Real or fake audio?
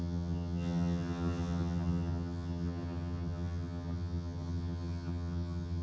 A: fake